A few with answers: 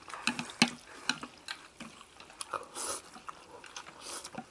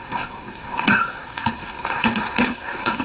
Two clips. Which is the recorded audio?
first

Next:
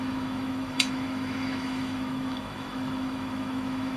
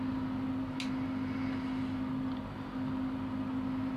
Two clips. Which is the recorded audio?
second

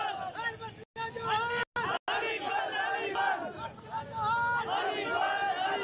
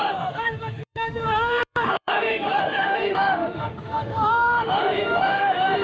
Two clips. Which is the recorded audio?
first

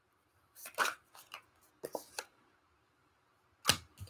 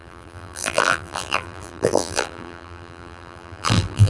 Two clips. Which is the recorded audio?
first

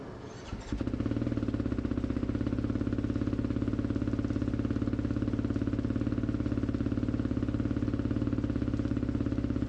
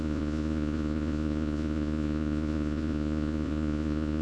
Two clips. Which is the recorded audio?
first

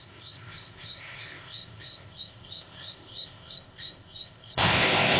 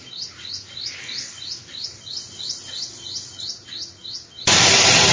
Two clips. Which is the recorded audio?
second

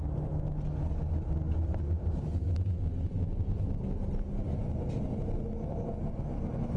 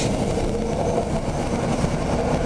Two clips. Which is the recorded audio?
first